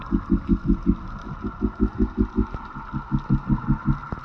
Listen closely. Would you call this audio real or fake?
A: real